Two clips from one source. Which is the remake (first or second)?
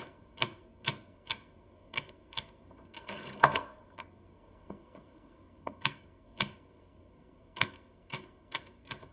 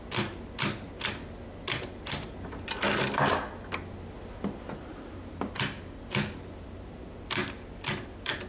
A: first